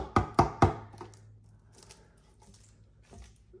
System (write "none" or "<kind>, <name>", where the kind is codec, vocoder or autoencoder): none